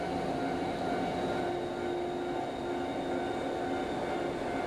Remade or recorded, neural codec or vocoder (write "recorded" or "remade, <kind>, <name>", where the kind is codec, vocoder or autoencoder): recorded